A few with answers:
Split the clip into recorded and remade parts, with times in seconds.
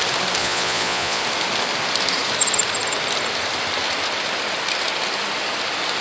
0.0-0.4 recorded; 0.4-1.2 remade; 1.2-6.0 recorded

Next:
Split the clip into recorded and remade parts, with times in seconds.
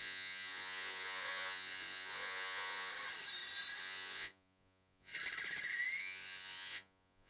0.0-2.9 remade; 2.9-3.8 recorded; 3.8-5.1 remade; 5.1-6.0 recorded; 6.0-7.3 remade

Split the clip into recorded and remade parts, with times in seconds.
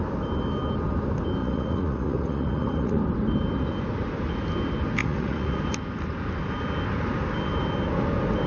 0.0-1.4 recorded; 1.4-3.0 remade; 3.0-5.0 recorded; 5.0-5.6 remade; 5.6-8.5 recorded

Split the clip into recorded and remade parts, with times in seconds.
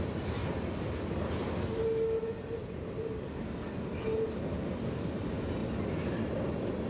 0.0-6.9 recorded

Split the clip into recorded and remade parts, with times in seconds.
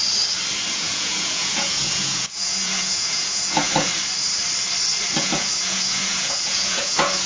0.0-0.7 recorded; 0.7-3.9 remade; 3.9-5.2 recorded; 5.2-7.3 remade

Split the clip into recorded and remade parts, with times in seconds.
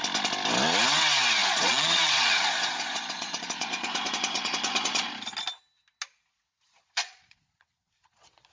0.0-1.4 recorded; 1.4-5.1 remade; 5.1-6.5 recorded; 6.5-8.5 remade